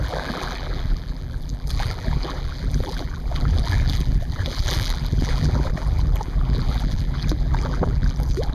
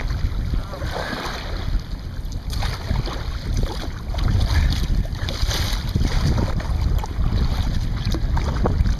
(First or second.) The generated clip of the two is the first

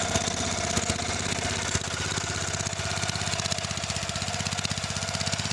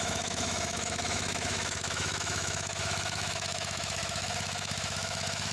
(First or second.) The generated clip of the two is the second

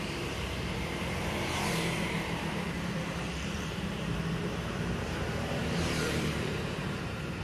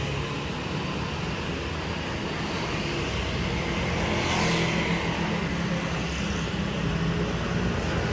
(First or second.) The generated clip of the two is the first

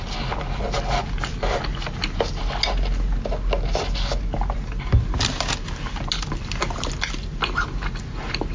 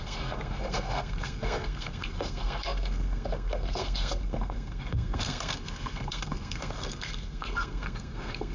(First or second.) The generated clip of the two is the second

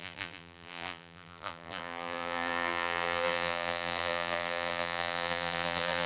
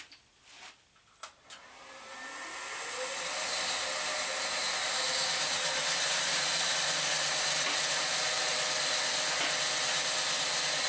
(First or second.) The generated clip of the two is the first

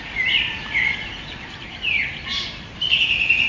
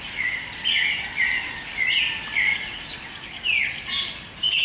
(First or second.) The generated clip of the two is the first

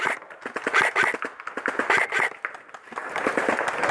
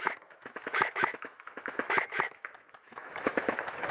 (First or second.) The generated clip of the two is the second